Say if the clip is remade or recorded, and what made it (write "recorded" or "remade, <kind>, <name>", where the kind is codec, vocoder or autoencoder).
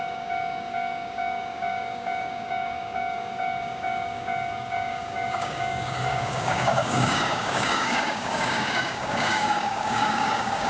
remade, codec, DAC